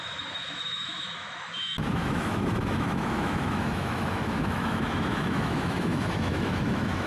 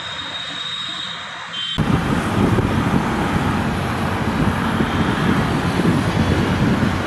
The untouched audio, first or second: second